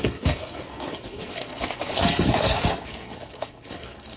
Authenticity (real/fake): fake